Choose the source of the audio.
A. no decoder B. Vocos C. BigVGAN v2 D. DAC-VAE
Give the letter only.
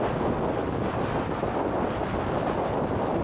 A